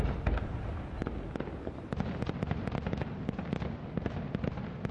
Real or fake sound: real